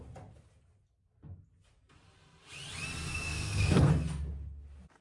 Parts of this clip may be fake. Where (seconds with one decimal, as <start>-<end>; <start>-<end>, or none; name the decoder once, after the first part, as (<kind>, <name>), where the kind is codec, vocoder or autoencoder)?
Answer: 3.1-3.9 (codec, SNAC)